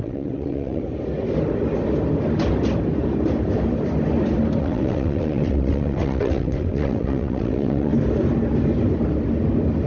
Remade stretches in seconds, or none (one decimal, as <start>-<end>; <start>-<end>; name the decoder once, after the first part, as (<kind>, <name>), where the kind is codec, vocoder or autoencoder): 0.0-0.8 (vocoder, WaveNeXt); 4.6-7.9